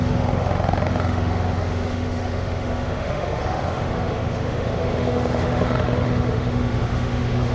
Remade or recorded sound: remade